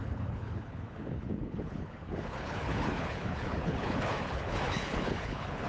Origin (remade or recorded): remade